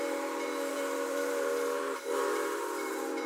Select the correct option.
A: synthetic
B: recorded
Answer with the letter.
A